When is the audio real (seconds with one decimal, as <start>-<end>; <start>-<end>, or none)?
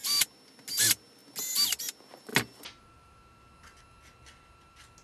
0.0-5.0